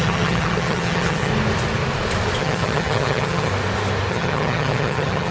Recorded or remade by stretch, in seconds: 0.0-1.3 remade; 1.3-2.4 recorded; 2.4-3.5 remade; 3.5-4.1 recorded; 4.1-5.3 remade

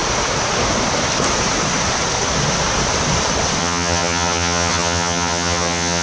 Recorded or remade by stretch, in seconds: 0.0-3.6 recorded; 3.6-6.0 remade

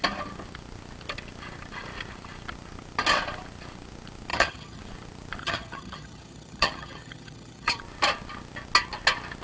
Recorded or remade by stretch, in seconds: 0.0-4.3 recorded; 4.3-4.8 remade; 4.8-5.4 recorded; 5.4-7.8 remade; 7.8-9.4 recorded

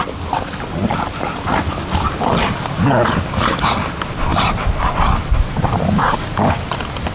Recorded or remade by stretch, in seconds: 0.0-7.1 recorded

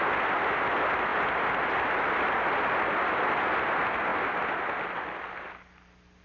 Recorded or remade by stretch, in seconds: 0.0-6.2 recorded

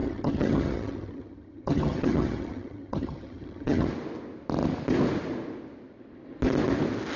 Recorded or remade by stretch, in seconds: 0.0-3.9 remade; 3.9-7.2 recorded